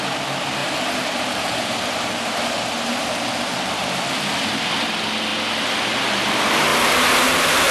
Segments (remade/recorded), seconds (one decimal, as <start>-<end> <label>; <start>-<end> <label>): 0.0-0.6 recorded; 0.6-3.1 remade; 3.1-6.7 recorded; 6.7-7.3 remade; 7.3-7.7 recorded